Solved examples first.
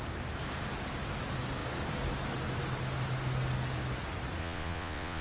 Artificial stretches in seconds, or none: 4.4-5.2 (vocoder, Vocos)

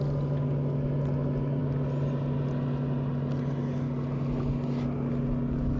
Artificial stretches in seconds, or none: none

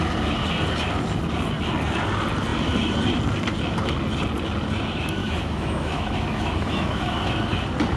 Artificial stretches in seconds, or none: 5.2-7.4 (autoencoder, DAC-VAE)

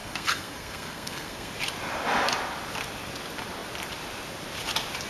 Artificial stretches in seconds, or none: 0.0-1.5 (codec, SNAC)

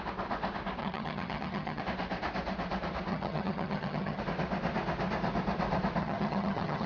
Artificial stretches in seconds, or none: 0.8-1.8 (vocoder, HiFi-GAN); 3.1-4.2; 6.0-6.9

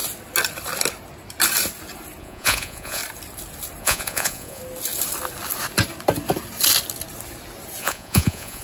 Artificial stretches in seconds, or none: 2.2-3.0 (vocoder, Vocos); 3.8-4.6; 7.8-8.6

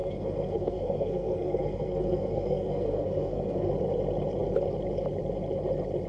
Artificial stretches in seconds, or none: 0.0-3.7 (codec, SNAC)

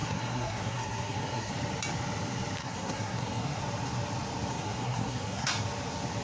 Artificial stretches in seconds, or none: 0.0-1.5 (codec, SNAC); 2.6-3.6; 4.5-5.5